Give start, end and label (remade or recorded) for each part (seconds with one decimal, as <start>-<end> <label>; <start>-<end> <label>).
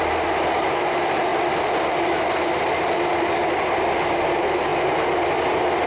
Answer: 0.0-1.3 recorded; 1.3-2.6 remade; 2.6-5.9 recorded